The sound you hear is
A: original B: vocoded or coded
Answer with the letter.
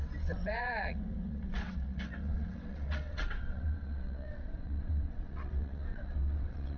B